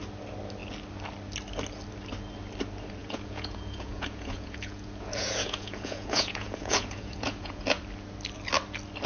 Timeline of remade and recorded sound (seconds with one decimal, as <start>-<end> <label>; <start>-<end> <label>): 0.0-3.0 recorded; 3.0-7.8 remade; 7.8-9.1 recorded